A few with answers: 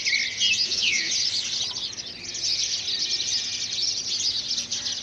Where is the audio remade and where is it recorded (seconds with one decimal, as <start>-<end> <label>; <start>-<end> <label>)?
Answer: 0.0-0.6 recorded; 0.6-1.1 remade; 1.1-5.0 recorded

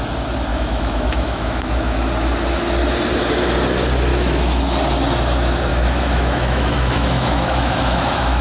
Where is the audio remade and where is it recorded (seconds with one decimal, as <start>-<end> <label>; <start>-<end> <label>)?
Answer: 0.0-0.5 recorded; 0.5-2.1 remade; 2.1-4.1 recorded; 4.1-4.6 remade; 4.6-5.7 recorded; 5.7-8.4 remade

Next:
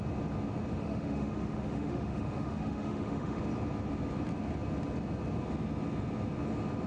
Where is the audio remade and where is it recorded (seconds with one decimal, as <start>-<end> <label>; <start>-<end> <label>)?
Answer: 0.0-0.8 recorded; 0.8-3.4 remade; 3.4-6.9 recorded